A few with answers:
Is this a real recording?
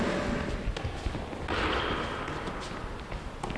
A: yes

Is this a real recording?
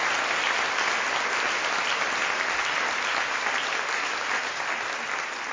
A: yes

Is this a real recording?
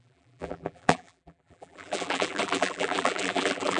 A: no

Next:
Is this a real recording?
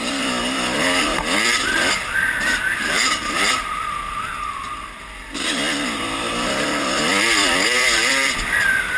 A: no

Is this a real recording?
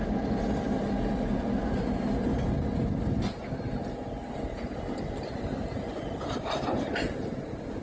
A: yes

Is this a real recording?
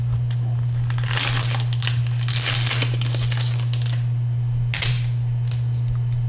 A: yes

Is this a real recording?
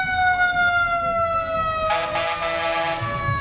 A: yes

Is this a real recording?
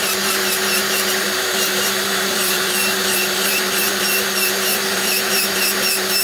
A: no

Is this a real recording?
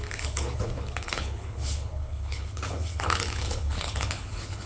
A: no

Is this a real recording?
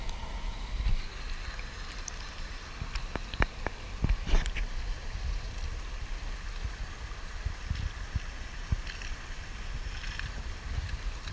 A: yes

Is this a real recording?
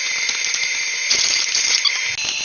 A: yes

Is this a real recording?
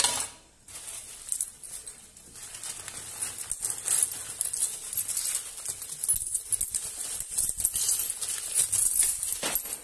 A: yes